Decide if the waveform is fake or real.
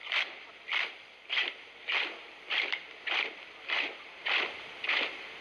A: fake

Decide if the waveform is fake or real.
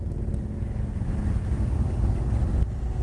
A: real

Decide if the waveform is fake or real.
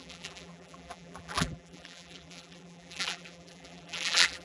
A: fake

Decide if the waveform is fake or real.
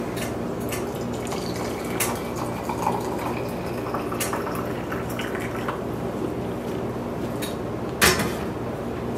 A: real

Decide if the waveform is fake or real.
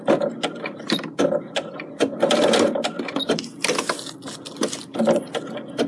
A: fake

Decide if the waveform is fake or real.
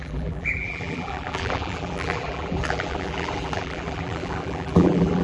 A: fake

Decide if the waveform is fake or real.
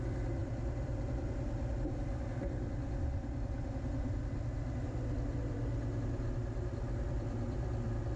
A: fake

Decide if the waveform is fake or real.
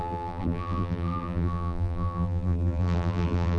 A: fake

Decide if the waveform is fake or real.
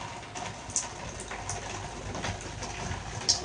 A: real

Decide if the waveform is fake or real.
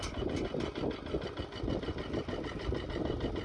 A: real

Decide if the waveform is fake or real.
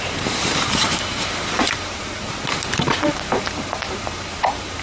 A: fake